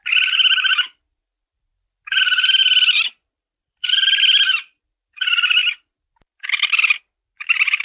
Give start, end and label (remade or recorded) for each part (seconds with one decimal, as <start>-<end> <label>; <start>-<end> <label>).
0.0-2.6 recorded; 2.6-4.8 remade; 4.8-7.8 recorded